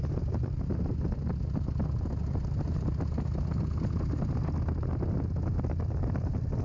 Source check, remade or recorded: recorded